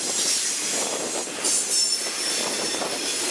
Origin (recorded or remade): remade